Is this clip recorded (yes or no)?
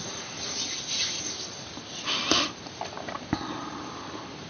yes